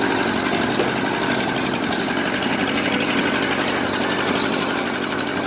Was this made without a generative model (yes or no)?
yes